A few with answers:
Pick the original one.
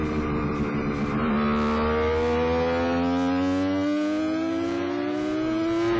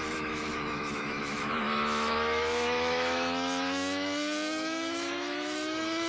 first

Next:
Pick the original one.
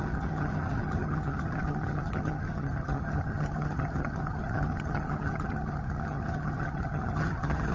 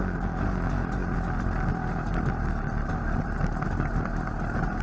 second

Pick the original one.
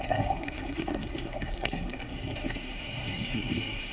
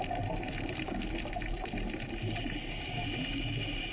second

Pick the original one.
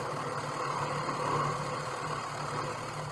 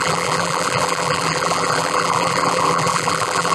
first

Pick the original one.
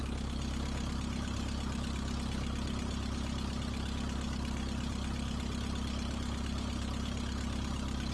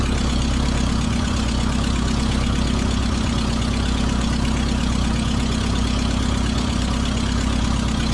first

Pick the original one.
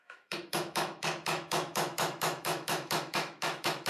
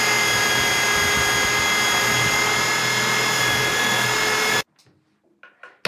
second